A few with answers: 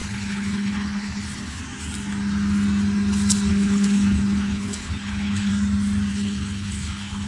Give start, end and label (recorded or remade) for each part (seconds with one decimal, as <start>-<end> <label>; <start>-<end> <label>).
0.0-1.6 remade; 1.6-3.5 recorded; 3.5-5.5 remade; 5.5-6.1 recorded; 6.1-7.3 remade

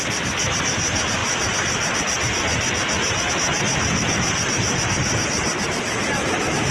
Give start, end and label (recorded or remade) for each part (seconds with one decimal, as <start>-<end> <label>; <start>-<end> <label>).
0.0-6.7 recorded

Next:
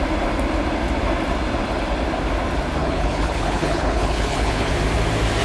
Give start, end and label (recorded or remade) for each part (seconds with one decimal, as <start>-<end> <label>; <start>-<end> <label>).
0.0-2.8 recorded; 2.8-4.7 remade; 4.7-5.4 recorded